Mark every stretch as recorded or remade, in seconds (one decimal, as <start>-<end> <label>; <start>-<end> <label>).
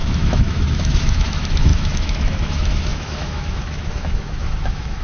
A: 0.0-5.0 remade